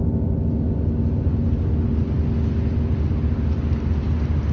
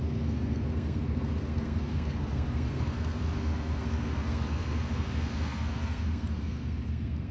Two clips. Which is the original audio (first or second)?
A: first